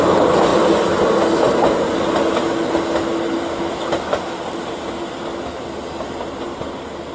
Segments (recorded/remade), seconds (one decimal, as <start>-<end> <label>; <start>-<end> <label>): 0.0-7.1 recorded